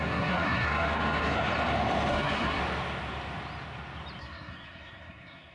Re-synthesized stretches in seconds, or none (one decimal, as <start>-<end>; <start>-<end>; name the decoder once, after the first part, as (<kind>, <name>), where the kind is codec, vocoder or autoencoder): 0.0-1.5 (codec, SNAC); 2.1-2.6; 4.2-5.5